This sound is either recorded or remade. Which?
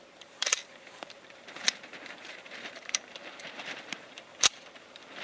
remade